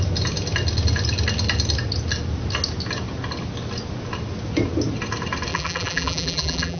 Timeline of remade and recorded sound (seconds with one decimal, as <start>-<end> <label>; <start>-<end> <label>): 0.0-5.5 recorded; 5.5-6.8 remade